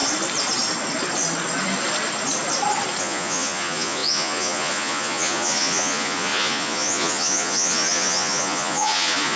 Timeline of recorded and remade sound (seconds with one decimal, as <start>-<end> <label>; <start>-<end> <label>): 0.0-3.0 recorded; 3.0-9.4 remade